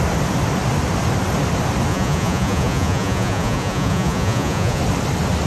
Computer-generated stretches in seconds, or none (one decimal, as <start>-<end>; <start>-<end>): 1.9-4.8